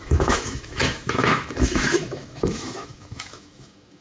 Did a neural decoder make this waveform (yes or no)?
yes